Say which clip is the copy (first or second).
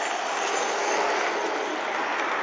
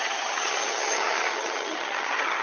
second